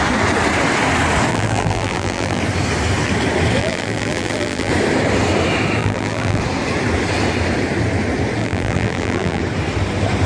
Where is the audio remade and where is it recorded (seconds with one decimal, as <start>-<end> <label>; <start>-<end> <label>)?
0.0-1.3 recorded; 1.3-2.4 remade; 2.4-3.6 recorded; 3.6-4.7 remade; 4.7-5.8 recorded; 5.8-6.4 remade; 6.4-8.4 recorded; 8.4-9.4 remade; 9.4-10.3 recorded